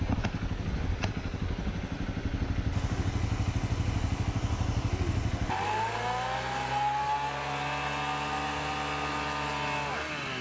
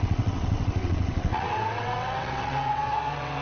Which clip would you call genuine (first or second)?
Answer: first